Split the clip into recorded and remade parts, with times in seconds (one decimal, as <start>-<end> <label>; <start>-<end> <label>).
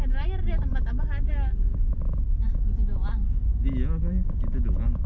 0.0-5.1 recorded